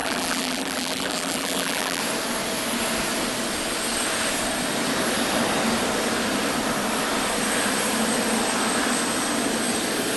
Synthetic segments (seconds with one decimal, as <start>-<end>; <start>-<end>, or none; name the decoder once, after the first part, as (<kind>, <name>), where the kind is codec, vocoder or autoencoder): 0.0-2.0 (vocoder, BigVGAN v2)